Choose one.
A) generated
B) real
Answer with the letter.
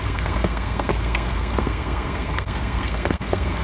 A